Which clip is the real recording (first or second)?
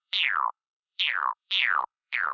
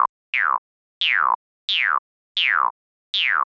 second